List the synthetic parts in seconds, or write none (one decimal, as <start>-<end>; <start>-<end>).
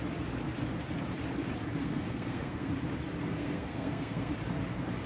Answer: 1.8-2.7; 3.2-4.3